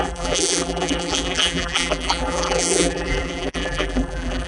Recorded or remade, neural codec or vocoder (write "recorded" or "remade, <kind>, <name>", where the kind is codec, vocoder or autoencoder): remade, vocoder, BigVGAN v2